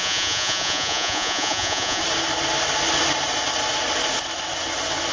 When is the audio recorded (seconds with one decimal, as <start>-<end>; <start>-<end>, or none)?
2.0-5.1